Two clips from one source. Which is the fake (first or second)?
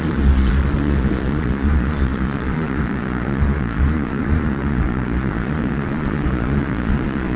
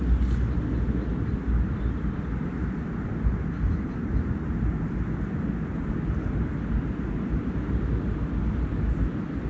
first